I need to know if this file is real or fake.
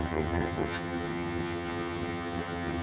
fake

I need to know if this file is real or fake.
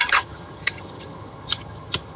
fake